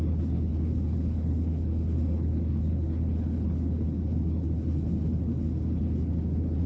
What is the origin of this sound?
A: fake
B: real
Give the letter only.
A